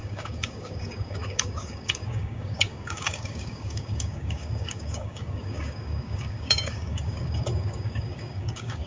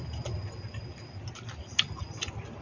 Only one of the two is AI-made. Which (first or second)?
first